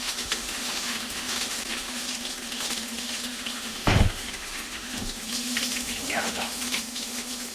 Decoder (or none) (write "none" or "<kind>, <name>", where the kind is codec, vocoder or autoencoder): autoencoder, DAC-VAE